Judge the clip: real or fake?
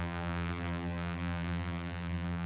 fake